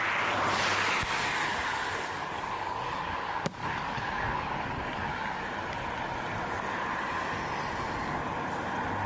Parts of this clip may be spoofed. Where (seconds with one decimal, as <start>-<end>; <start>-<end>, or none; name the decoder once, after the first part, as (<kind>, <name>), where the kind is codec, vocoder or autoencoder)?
1.5-5.4 (codec, DAC)